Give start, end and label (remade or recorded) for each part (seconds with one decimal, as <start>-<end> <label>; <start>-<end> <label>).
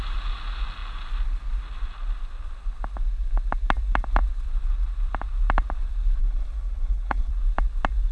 0.0-6.2 recorded; 6.2-7.3 remade; 7.3-8.1 recorded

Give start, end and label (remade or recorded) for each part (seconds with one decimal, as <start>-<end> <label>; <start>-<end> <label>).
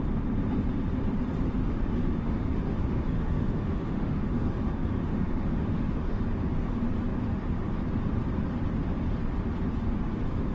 0.0-1.6 recorded; 1.6-6.2 remade; 6.2-10.5 recorded